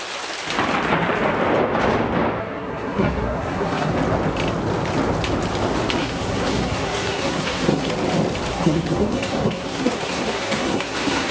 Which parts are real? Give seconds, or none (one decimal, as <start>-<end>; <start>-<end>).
0.0-2.4; 3.9-6.0; 7.9-8.5